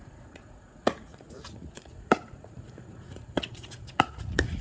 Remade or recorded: remade